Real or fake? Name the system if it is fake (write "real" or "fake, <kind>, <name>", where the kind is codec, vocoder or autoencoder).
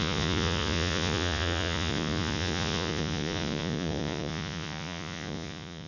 fake, vocoder, Vocos